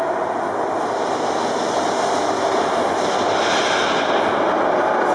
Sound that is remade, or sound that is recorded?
recorded